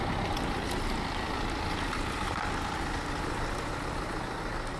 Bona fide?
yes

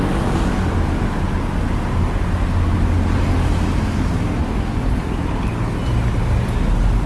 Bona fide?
yes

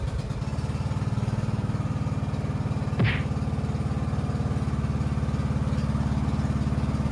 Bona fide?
yes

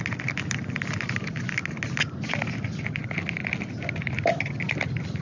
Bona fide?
yes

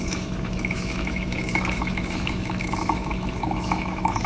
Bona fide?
no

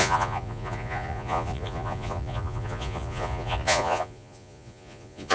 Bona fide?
no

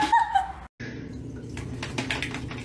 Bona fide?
yes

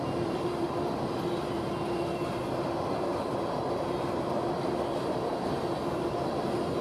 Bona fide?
yes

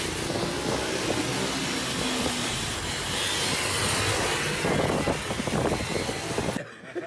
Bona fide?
yes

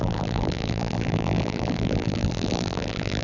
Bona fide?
no